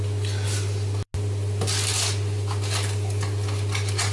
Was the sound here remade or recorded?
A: recorded